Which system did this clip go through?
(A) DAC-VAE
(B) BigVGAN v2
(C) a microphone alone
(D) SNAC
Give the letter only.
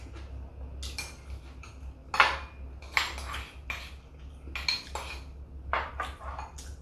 C